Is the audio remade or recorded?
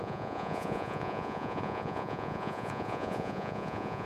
remade